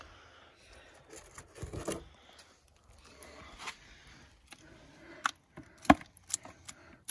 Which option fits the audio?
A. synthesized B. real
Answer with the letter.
B